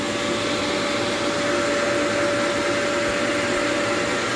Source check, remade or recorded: recorded